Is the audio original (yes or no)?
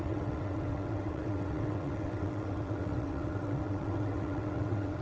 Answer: no